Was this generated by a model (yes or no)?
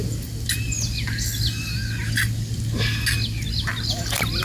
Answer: no